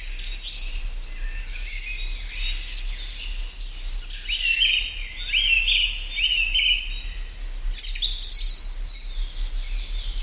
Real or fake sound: real